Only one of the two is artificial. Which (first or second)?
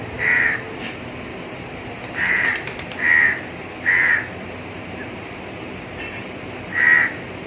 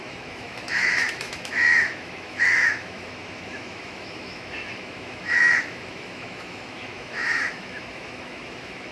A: second